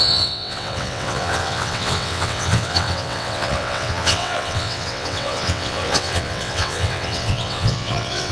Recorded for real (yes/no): no